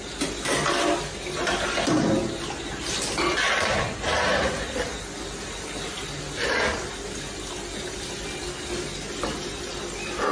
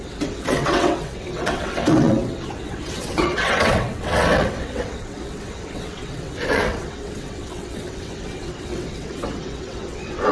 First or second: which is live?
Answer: first